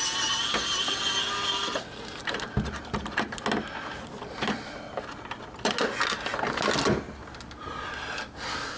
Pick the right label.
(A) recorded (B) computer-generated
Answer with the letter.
A